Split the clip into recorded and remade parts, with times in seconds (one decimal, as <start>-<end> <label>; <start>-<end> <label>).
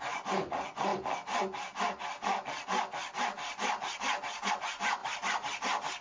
0.0-0.9 remade; 0.9-4.5 recorded; 4.5-5.0 remade; 5.0-6.0 recorded